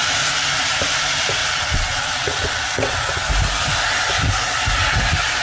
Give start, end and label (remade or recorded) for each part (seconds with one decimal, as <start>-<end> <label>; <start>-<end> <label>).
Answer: 0.0-1.4 recorded; 1.4-3.3 remade; 3.3-5.4 recorded